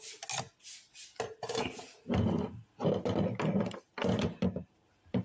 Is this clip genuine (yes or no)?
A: yes